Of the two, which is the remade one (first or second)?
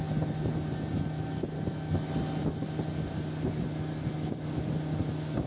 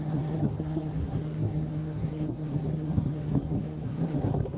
second